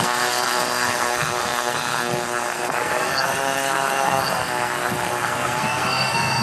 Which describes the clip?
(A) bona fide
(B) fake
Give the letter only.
B